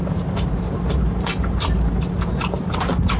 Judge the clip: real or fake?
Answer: fake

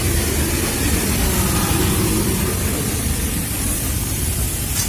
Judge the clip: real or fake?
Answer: real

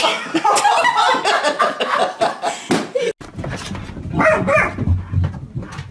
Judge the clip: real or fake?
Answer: real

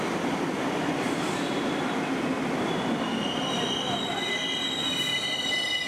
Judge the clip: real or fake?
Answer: fake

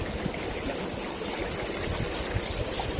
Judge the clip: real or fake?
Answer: real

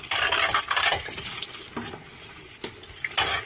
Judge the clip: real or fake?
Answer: real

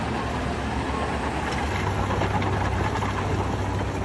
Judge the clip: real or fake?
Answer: real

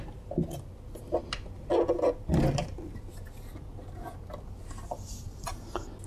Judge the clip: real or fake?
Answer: real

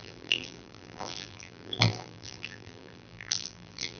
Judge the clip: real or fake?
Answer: fake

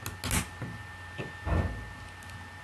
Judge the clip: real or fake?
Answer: real